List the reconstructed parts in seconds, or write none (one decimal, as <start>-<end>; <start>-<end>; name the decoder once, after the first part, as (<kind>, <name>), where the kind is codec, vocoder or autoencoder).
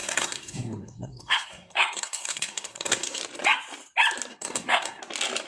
0.0-3.2 (codec, SNAC); 4.3-5.0